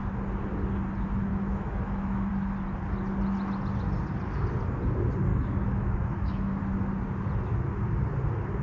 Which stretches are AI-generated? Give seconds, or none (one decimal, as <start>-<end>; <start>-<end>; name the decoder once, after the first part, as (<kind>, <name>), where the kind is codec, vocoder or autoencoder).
1.3-2.3 (autoencoder, DAC-VAE); 5.3-6.6